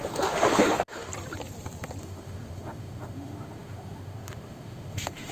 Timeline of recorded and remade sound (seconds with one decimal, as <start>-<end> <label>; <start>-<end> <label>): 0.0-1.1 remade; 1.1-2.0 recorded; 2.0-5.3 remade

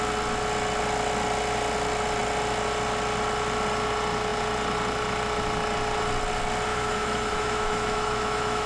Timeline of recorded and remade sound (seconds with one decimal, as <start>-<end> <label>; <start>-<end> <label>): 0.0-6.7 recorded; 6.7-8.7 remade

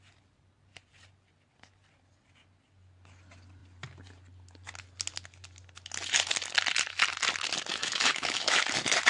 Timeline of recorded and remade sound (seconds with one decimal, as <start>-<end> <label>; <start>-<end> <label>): 0.0-7.7 recorded; 7.7-8.6 remade; 8.6-9.1 recorded

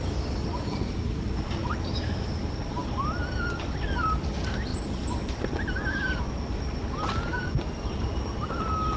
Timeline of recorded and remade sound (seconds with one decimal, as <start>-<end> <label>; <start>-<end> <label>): 0.0-1.6 recorded; 1.6-2.3 remade; 2.3-9.0 recorded

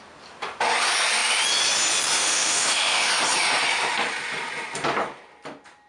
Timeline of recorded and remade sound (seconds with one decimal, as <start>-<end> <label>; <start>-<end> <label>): 0.0-2.1 recorded; 2.1-3.1 remade; 3.1-5.9 recorded